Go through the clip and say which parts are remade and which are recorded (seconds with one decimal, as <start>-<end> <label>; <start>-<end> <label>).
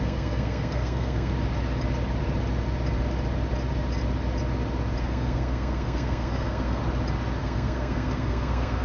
0.0-1.3 remade; 1.3-5.0 recorded; 5.0-6.8 remade; 6.8-7.4 recorded; 7.4-8.8 remade